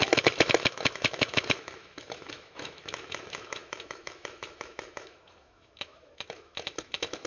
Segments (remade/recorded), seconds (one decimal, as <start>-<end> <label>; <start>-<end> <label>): 0.0-7.3 remade